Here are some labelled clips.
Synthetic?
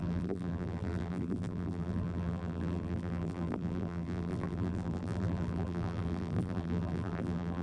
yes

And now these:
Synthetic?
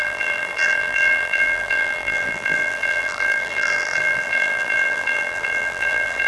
yes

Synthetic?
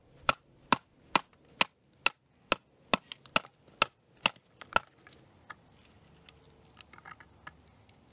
no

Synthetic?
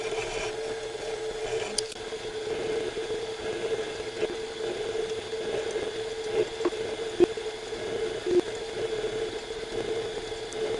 no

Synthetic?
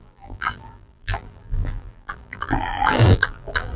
yes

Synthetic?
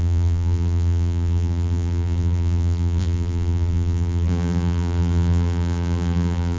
yes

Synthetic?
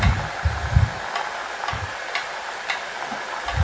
no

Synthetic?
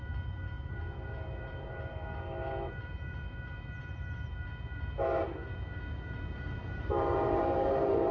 yes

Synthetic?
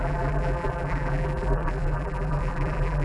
yes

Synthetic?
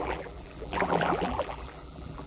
yes